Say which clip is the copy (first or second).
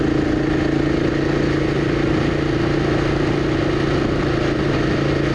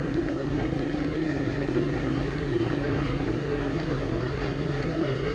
second